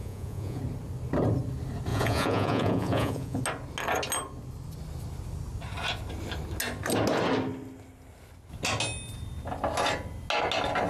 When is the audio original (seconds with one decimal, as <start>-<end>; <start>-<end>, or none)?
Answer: 0.6-1.9; 3.4-10.9